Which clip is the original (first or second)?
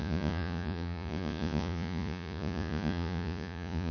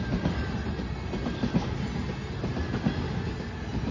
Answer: second